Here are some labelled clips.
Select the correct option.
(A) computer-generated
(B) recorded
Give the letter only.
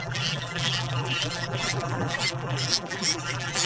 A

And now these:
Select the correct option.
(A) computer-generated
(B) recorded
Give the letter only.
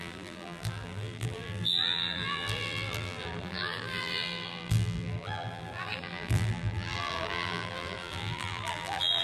A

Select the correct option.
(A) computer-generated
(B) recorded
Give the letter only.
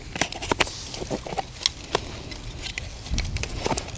B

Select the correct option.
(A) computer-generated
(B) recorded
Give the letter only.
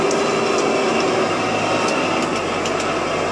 B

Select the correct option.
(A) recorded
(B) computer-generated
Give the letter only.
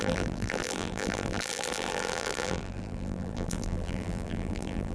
B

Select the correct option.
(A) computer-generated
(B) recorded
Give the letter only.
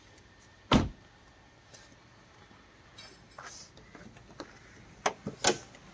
B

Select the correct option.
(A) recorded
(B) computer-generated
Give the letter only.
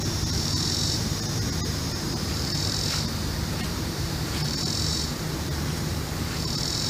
B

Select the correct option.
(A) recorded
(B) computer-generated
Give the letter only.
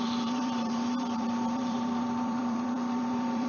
B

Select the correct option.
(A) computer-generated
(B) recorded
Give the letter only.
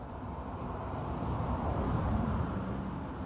A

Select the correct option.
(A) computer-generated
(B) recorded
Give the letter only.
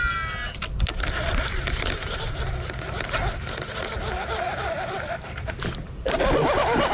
B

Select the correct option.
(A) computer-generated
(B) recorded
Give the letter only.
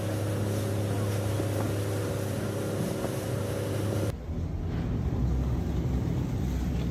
B